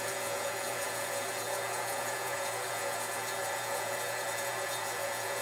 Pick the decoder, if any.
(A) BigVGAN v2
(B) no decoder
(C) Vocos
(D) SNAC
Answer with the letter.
C